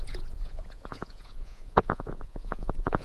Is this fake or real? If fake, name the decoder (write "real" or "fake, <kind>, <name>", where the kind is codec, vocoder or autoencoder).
fake, vocoder, Vocos